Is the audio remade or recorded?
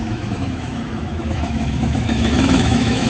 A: remade